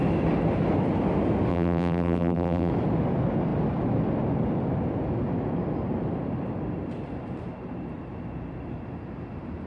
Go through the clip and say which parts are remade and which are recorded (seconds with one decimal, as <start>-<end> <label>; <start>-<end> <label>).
0.0-1.5 recorded; 1.5-2.7 remade; 2.7-9.7 recorded